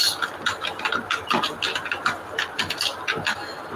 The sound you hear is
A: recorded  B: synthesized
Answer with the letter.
A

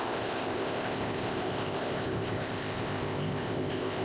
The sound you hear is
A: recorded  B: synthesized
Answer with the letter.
B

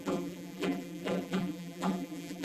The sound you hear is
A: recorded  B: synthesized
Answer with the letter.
B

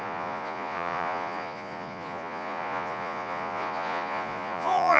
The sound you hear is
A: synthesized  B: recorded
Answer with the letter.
A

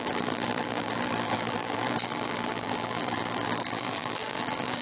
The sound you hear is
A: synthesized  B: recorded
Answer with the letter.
A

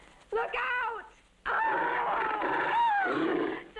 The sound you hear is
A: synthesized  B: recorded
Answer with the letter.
B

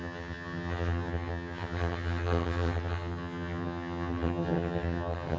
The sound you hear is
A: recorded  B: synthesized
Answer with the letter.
B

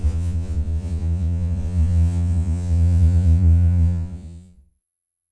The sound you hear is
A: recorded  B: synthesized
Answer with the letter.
B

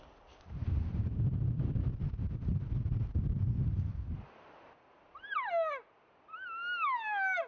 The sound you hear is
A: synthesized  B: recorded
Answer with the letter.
B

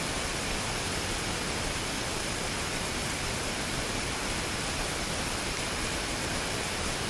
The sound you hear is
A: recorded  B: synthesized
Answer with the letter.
A